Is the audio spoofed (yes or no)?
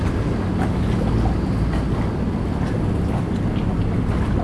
no